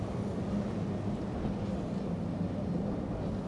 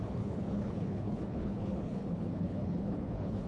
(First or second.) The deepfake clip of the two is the second